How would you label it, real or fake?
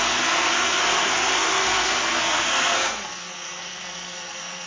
fake